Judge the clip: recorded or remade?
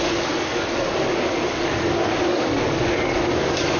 remade